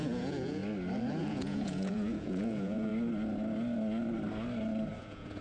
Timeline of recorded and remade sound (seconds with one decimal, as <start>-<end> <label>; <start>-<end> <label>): 0.0-0.6 remade; 0.6-1.2 recorded; 1.2-2.9 remade; 2.9-5.0 recorded; 5.0-5.4 remade